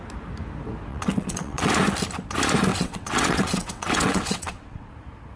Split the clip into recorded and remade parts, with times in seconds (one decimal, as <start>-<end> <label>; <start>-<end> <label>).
0.0-0.9 recorded; 0.9-1.7 remade; 1.7-2.7 recorded; 2.7-4.9 remade; 4.9-5.4 recorded